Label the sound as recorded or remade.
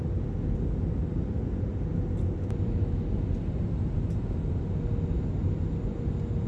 recorded